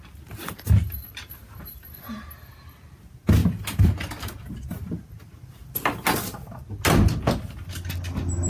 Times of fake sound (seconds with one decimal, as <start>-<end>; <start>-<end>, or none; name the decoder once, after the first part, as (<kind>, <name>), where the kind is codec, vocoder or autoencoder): none